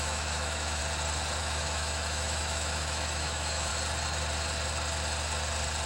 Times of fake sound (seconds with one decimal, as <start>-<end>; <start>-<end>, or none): 0.0-0.8; 1.4-3.7